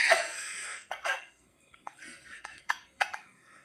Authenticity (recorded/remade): remade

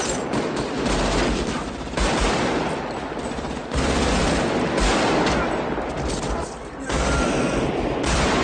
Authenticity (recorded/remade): recorded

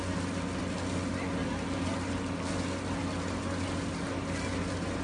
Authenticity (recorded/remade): recorded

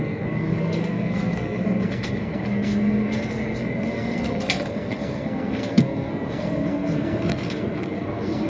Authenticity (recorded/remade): remade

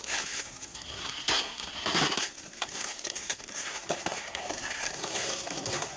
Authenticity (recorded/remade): remade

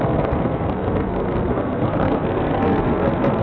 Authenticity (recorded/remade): remade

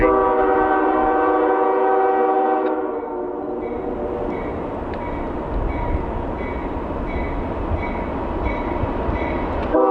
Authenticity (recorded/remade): recorded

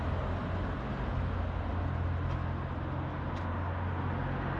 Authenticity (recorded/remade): recorded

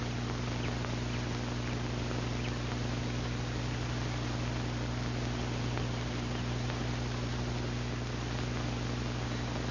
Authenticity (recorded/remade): recorded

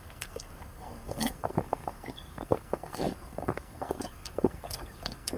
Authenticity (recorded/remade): remade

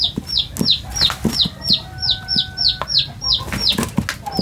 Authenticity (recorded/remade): recorded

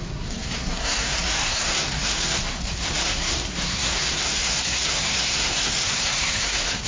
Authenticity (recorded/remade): remade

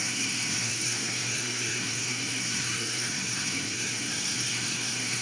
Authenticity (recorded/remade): remade